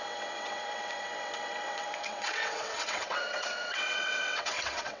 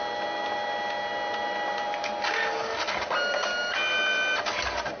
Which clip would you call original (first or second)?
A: second